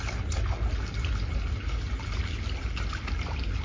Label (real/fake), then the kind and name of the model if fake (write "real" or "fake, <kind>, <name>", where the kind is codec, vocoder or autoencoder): real